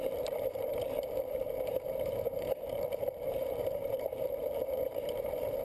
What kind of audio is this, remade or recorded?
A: remade